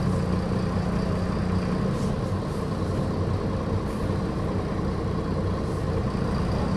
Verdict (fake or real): real